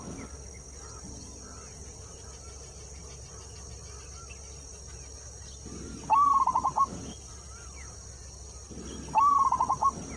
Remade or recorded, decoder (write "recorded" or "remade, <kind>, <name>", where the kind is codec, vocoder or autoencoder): recorded